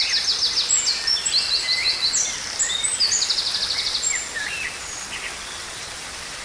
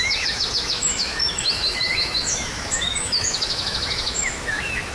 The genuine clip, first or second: first